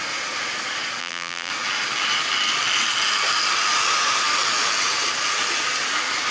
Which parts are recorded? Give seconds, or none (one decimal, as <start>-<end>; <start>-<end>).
0.0-1.0; 1.5-6.3